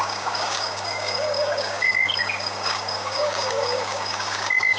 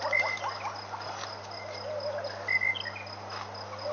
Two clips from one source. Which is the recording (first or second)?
second